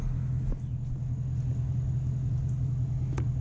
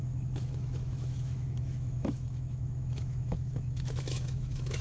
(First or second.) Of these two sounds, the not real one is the second